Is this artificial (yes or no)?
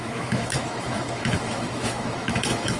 yes